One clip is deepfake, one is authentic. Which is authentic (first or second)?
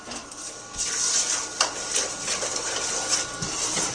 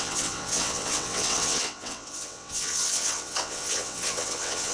first